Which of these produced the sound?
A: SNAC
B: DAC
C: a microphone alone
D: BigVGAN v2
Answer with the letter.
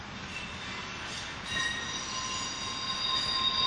C